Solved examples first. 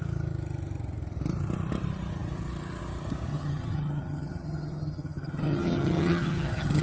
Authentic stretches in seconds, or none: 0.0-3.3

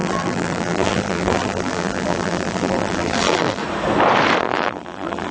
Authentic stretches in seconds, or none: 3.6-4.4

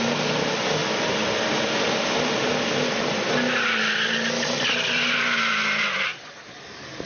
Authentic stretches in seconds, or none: 0.0-7.1

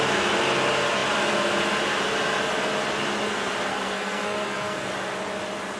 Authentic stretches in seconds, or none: 0.0-3.7; 4.9-5.8

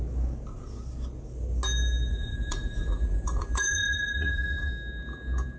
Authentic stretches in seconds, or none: 0.0-2.1; 4.7-5.6

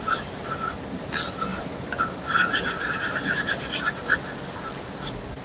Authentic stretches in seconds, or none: 0.0-5.4

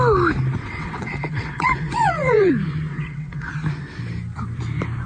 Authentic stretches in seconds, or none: 0.0-0.6; 2.5-2.9; 3.5-5.1

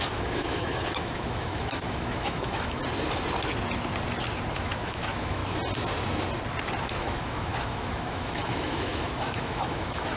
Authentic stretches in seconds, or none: 2.8-4.5; 5.4-6.8